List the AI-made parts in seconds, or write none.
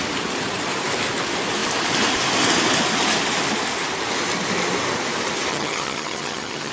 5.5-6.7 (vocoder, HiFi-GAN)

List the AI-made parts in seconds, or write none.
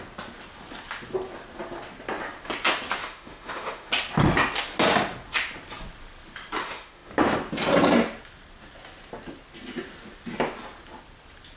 3.0-3.9 (autoencoder, DAC-VAE); 6.6-7.1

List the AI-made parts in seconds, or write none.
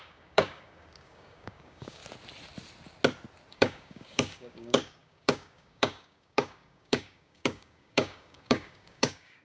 0.0-2.0 (codec, DAC); 3.5-9.4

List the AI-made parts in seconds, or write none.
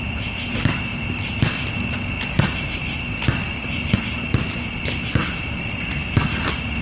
none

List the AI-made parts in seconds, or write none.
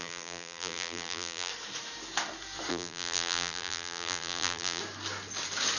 0.0-1.5 (vocoder, BigVGAN v2); 2.7-4.8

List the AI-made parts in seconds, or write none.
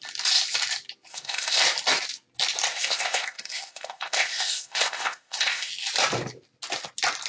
1.1-1.6 (codec, ZipCodec); 2.7-5.7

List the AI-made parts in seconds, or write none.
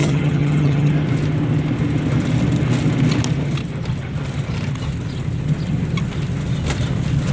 0.0-0.9 (vocoder, HiFi-GAN)